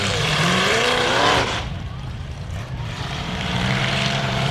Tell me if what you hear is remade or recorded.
remade